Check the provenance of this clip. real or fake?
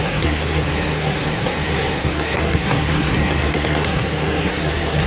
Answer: fake